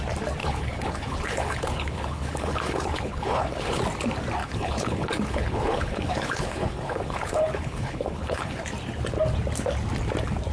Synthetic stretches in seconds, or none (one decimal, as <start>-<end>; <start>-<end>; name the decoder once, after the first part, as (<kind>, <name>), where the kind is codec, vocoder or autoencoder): 0.4-3.8 (codec, HILCodec); 4.4-8.6